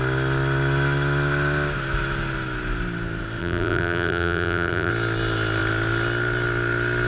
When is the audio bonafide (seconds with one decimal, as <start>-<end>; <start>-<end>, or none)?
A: 0.0-3.4; 4.9-7.1